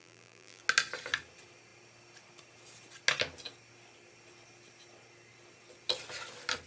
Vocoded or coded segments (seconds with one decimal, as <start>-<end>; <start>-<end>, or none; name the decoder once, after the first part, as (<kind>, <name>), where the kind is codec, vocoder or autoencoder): 0.0-0.6 (vocoder, BigVGAN v2)